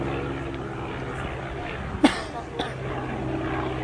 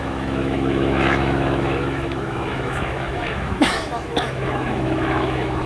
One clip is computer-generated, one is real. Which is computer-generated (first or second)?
second